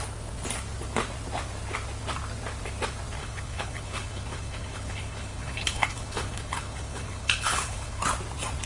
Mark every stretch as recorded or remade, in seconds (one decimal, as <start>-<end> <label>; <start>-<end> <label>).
0.0-3.2 recorded; 3.2-8.0 remade; 8.0-8.7 recorded